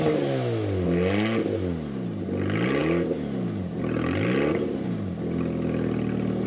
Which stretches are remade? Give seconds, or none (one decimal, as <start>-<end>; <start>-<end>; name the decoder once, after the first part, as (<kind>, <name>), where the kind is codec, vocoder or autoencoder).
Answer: none